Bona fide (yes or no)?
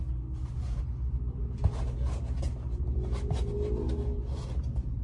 yes